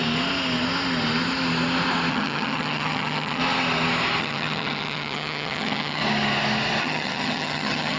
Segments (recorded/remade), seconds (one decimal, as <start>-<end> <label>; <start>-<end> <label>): 0.0-2.1 recorded; 2.1-3.4 remade; 3.4-4.2 recorded; 4.2-6.0 remade; 6.0-6.8 recorded; 6.8-8.0 remade